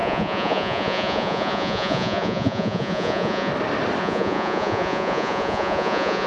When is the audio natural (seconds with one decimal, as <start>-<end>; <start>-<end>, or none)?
3.5-4.0